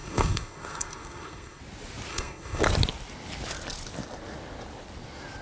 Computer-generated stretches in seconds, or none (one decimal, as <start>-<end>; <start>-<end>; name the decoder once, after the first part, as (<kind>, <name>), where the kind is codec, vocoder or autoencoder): 0.0-1.6 (codec, SNAC); 2.1-2.6